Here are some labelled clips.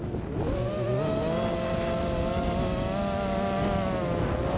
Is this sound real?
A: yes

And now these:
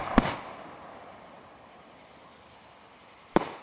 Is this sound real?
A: no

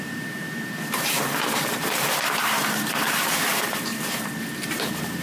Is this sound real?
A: no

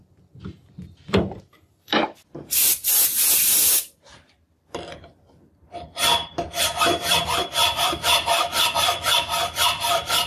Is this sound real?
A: no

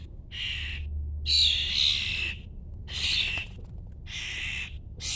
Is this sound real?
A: yes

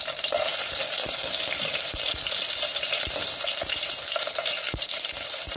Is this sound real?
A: no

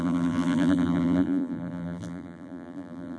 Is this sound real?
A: no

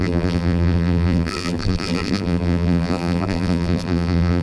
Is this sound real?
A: no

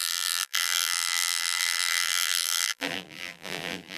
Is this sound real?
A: no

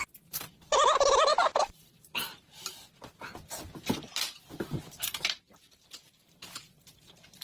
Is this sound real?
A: no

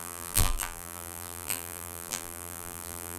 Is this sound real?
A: no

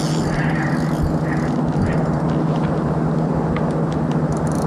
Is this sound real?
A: yes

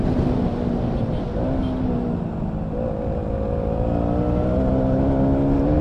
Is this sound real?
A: yes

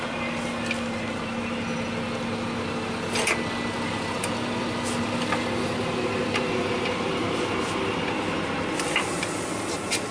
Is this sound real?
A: yes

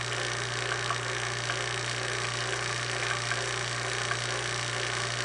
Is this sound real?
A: yes